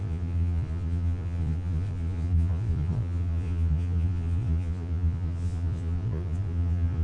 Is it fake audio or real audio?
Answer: fake